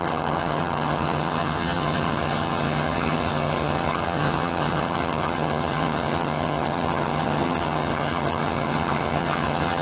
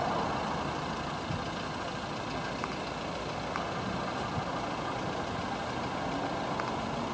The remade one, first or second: first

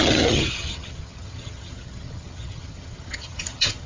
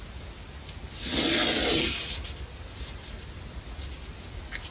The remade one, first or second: first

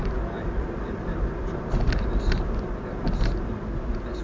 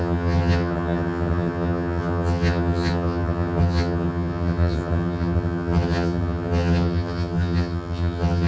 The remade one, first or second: second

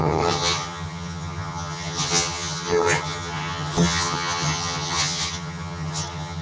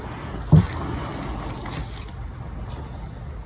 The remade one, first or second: first